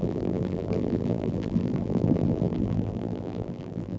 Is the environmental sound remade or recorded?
remade